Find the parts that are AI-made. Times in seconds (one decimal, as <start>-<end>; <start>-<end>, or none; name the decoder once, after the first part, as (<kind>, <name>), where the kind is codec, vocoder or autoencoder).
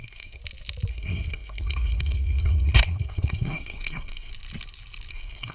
0.0-0.4 (codec, SNAC); 0.9-4.3; 5.1-5.5